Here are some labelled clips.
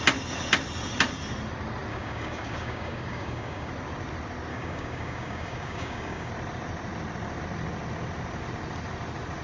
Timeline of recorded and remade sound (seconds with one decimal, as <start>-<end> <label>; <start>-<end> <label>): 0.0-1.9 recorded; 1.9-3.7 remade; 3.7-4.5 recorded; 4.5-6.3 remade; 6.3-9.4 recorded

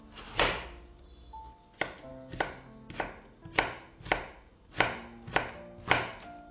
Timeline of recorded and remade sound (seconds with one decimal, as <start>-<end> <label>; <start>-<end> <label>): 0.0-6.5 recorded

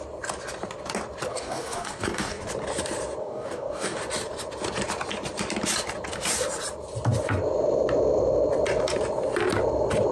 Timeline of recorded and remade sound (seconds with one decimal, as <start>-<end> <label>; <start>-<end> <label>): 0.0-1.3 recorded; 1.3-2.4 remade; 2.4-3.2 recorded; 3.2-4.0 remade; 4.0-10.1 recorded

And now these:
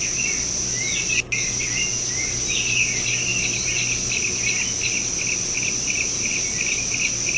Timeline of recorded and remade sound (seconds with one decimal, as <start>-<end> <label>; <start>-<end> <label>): 0.0-7.4 recorded